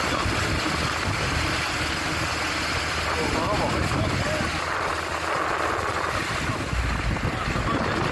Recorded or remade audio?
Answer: recorded